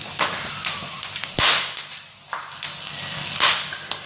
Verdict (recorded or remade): recorded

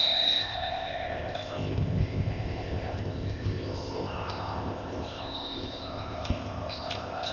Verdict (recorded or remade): remade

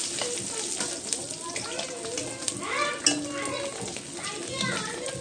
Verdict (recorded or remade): recorded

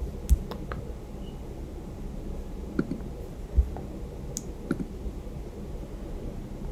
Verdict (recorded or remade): recorded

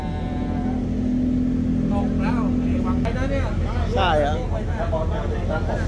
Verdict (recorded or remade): recorded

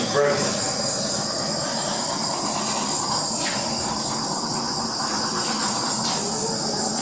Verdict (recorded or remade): recorded